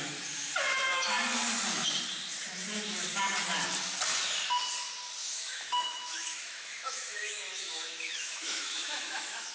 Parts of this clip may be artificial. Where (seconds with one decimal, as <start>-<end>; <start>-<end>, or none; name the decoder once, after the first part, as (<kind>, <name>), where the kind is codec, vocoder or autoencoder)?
5.2-9.5 (autoencoder, DAC-VAE)